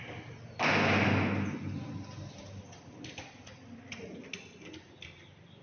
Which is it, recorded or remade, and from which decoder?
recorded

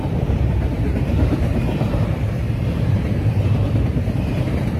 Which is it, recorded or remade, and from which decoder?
remade, vocoder, BigVGAN v2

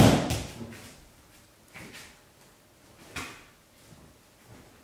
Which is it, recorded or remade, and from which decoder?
recorded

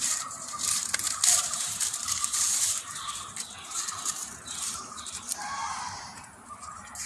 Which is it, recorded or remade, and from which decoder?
remade, vocoder, BigVGAN v2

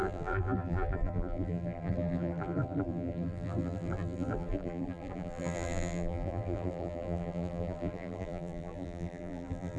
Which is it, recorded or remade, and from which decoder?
remade, vocoder, BigVGAN v2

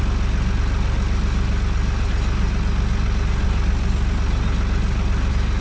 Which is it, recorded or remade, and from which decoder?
recorded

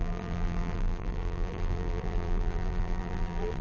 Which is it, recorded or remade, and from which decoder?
remade, vocoder, BigVGAN v2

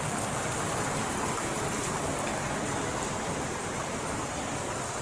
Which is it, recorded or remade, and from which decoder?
remade, vocoder, BigVGAN v2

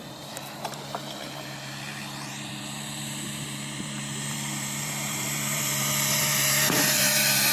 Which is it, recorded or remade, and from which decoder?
remade, vocoder, BigVGAN v2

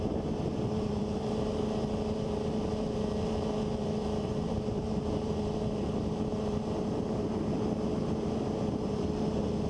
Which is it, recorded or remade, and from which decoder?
remade, vocoder, BigVGAN v2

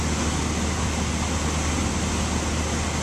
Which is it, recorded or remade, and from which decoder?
recorded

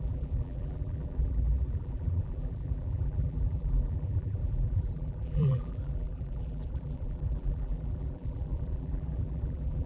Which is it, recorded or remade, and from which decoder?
remade, vocoder, BigVGAN v2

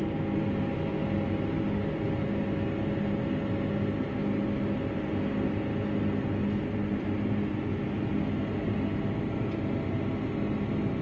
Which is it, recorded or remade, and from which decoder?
recorded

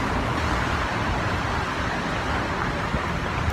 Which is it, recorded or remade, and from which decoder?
recorded